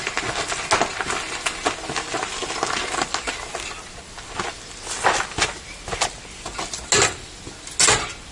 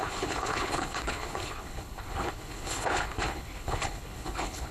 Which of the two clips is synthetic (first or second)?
second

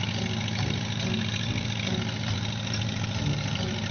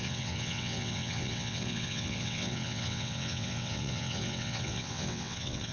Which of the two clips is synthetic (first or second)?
second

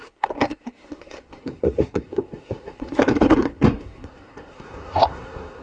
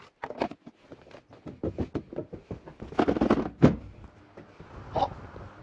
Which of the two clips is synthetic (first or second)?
first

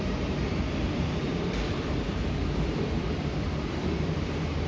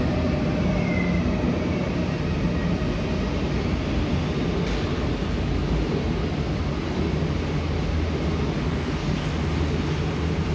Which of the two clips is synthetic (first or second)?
first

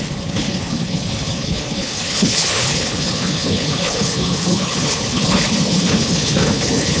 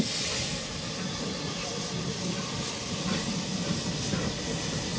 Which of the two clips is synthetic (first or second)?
first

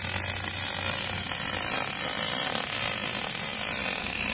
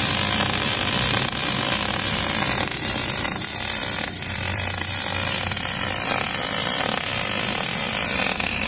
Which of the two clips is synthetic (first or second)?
second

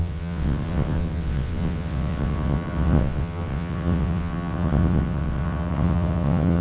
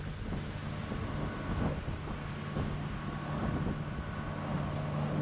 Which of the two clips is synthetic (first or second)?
first